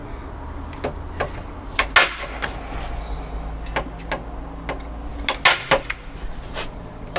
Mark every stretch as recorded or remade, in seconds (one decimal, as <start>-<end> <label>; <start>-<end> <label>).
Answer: 0.0-7.2 recorded

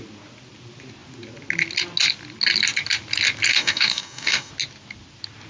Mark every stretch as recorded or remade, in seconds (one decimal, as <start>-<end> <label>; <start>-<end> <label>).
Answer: 0.0-3.5 recorded; 3.5-4.5 remade; 4.5-5.5 recorded